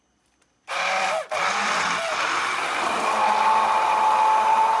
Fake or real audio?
real